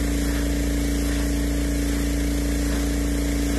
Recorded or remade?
recorded